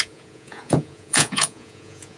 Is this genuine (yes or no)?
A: no